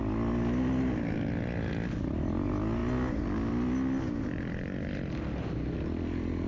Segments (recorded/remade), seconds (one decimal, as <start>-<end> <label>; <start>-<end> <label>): 0.0-6.5 recorded